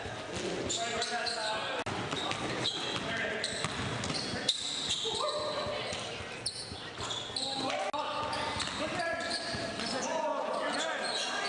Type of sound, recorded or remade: recorded